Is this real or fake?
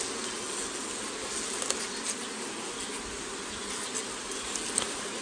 real